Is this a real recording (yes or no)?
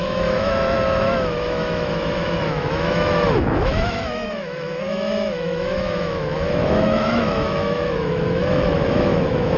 no